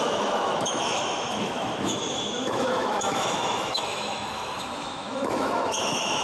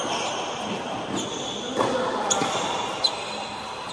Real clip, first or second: second